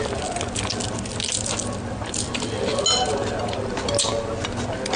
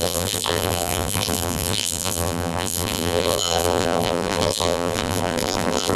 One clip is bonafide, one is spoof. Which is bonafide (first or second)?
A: first